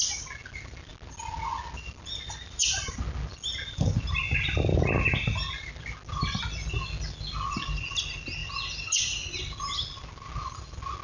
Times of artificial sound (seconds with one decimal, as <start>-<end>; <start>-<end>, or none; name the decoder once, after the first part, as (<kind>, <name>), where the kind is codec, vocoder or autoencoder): none